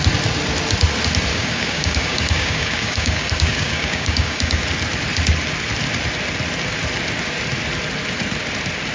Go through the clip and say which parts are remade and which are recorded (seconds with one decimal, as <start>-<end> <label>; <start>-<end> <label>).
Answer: 0.0-1.3 recorded; 1.3-4.6 remade; 4.6-8.9 recorded

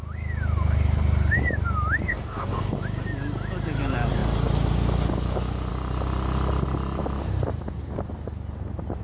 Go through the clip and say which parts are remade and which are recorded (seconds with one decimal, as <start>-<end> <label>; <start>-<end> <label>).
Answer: 0.0-2.1 recorded; 2.1-2.6 remade; 2.6-9.0 recorded

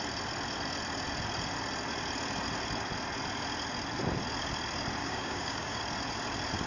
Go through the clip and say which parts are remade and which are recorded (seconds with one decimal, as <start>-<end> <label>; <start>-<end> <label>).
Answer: 0.0-5.0 recorded; 5.0-5.8 remade; 5.8-6.7 recorded

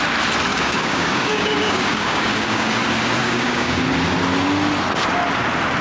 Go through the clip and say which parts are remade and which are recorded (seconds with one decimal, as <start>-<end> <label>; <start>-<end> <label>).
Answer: 0.0-0.5 recorded; 0.5-2.8 remade; 2.8-3.2 recorded; 3.2-3.8 remade; 3.8-5.8 recorded

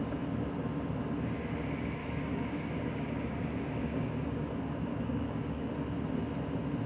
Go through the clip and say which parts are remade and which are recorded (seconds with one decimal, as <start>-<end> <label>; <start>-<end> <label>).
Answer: 0.0-2.0 recorded; 2.0-4.5 remade; 4.5-4.9 recorded; 4.9-5.7 remade; 5.7-6.9 recorded

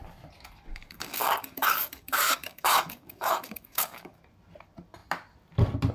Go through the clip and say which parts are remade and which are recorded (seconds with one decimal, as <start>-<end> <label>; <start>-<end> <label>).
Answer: 0.0-0.7 recorded; 0.7-4.2 remade; 4.2-5.9 recorded